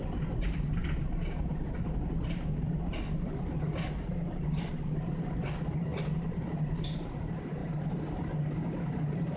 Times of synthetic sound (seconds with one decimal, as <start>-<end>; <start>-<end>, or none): none